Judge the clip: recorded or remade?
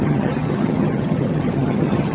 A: remade